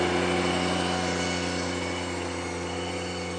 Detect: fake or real real